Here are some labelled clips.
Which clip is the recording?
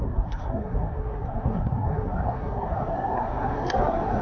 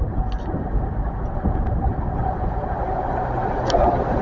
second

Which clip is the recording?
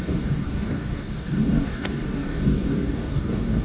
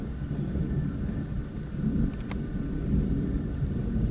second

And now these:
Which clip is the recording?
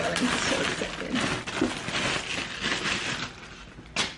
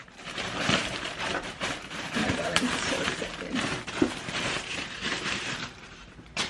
first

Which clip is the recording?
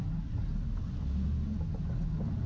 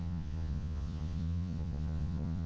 first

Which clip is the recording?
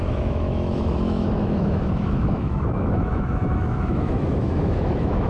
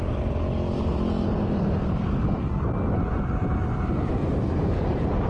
second